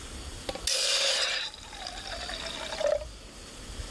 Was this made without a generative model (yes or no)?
yes